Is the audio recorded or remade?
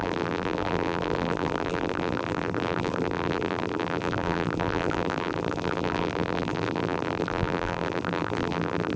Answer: remade